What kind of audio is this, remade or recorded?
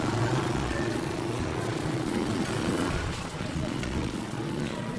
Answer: remade